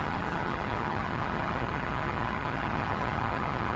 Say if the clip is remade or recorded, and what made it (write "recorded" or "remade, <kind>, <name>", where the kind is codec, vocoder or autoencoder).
remade, vocoder, HiFi-GAN